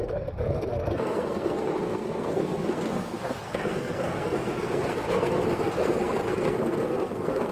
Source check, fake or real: fake